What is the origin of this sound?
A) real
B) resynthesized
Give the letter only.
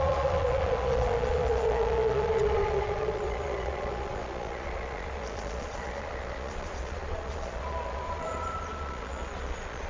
B